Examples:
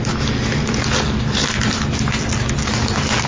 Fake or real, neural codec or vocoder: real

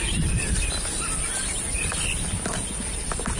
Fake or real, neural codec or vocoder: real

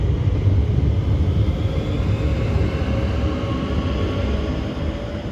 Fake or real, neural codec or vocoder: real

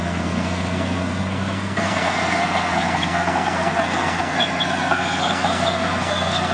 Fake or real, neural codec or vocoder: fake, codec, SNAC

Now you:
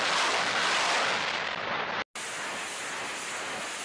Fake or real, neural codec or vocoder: real